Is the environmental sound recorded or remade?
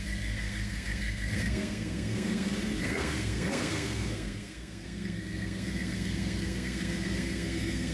remade